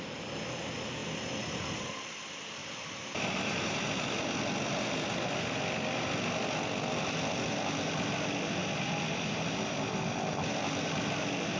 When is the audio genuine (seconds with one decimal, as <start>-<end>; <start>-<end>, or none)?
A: 0.0-2.6; 4.0-11.6